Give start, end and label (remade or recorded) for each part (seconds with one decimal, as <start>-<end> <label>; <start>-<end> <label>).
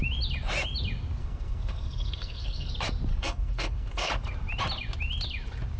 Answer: 0.0-1.2 recorded; 1.2-2.7 remade; 2.7-3.1 recorded; 3.1-4.1 remade; 4.1-5.8 recorded